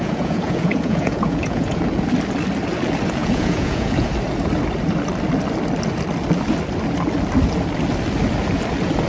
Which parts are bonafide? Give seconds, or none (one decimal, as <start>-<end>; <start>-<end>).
1.8-3.2; 4.1-9.1